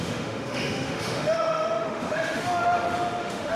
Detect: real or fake fake